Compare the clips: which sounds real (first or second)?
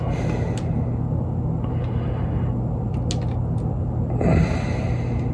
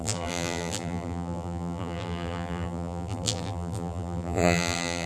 first